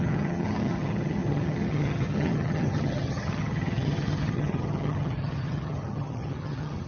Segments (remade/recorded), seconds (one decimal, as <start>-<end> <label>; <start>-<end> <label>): 0.0-6.9 remade